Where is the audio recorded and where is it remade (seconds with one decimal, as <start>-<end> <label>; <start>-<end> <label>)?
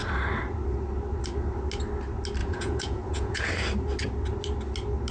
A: 0.0-2.4 recorded; 2.4-3.5 remade; 3.5-5.1 recorded